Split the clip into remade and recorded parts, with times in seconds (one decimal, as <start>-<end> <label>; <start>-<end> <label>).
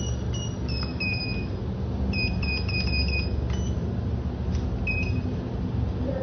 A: 0.0-0.9 recorded; 0.9-1.5 remade; 1.5-6.2 recorded